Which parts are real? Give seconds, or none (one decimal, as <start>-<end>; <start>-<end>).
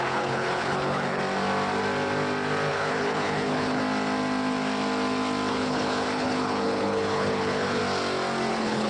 1.2-2.7; 3.8-5.5; 7.8-8.5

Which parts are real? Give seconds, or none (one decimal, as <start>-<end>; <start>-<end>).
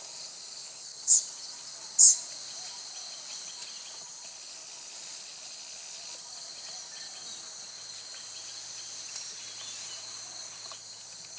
0.0-0.6; 1.2-11.4